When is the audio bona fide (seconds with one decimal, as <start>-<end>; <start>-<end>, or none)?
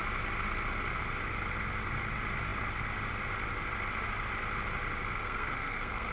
0.0-5.0